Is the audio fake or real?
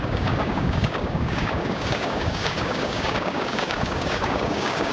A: fake